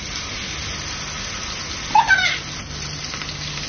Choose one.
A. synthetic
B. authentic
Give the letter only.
B